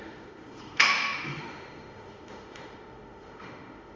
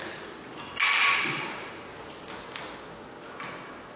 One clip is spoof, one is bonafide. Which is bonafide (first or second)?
second